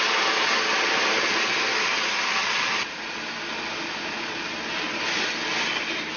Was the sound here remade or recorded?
recorded